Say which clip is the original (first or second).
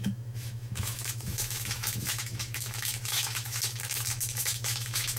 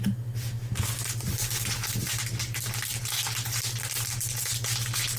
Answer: second